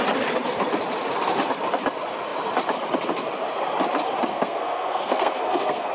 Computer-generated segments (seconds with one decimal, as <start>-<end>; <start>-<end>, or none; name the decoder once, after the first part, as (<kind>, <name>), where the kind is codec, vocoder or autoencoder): 4.3-5.9 (codec, SNAC)